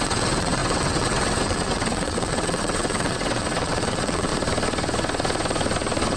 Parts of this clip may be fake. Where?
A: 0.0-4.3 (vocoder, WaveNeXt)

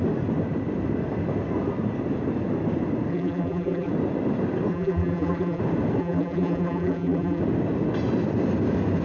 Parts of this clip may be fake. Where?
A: 3.1-3.9 (vocoder, BigVGAN v2); 4.7-5.6; 6.0-7.4

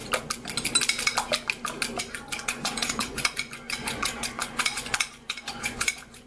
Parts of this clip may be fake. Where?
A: 2.0-6.3 (vocoder, Vocos)

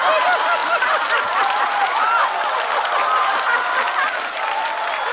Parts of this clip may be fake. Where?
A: 0.6-2.0 (vocoder, BigVGAN v2)